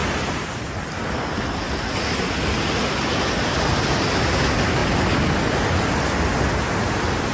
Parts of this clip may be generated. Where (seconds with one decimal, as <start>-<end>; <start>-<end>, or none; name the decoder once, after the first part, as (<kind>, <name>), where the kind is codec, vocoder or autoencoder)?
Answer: none